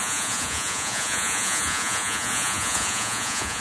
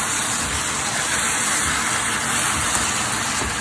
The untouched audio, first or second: second